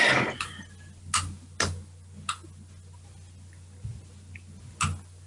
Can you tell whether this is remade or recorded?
recorded